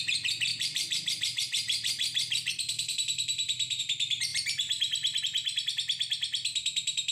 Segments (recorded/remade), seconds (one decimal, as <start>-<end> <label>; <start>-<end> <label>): 0.0-0.5 recorded; 0.5-3.8 remade; 3.8-7.1 recorded